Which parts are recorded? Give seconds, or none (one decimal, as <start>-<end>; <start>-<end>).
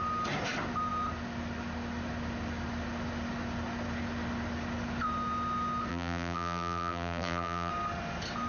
0.0-5.9; 7.7-8.5